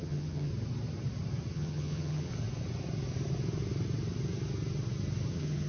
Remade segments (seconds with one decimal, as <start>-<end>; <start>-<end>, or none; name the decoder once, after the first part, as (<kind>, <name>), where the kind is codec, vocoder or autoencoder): 0.0-0.5 (vocoder, HiFi-GAN); 1.5-2.3; 5.3-5.7